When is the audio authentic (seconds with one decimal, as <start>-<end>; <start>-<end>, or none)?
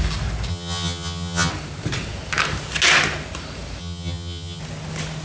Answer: 0.0-0.5; 1.5-3.8; 4.6-5.2